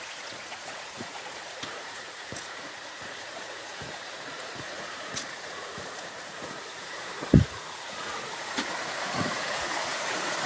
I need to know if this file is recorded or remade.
remade